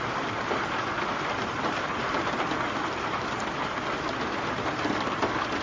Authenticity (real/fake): fake